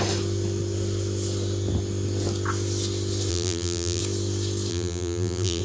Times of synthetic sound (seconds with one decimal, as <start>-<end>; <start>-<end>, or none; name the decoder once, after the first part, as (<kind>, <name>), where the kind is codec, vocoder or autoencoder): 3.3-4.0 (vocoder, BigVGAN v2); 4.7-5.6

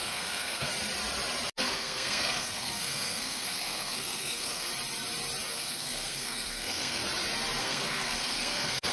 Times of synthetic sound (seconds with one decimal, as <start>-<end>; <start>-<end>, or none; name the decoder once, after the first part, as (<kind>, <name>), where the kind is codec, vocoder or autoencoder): 0.0-0.7 (codec, SNAC); 1.6-4.7; 5.5-7.0; 7.6-8.9

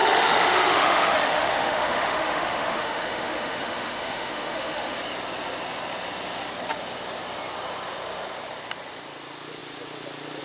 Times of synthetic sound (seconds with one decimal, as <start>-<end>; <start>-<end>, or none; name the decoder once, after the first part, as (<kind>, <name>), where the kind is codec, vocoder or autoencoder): 0.0-5.0 (autoencoder, DAC-VAE)

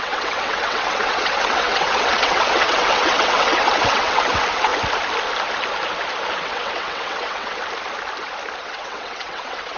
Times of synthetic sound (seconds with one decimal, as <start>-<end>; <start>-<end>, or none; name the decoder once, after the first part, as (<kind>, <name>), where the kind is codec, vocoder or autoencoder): 0.0-4.7 (vocoder, WaveNeXt); 6.4-7.6; 8.6-9.8